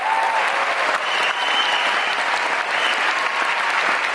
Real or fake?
real